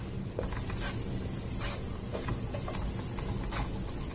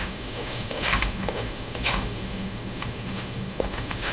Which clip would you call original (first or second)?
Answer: first